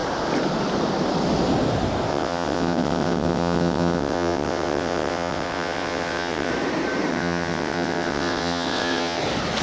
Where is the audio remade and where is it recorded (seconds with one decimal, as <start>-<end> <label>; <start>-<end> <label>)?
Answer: 0.0-2.1 recorded; 2.1-6.5 remade; 6.5-7.1 recorded; 7.1-9.2 remade; 9.2-9.6 recorded